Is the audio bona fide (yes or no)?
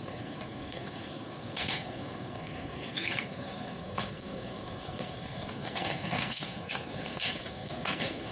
no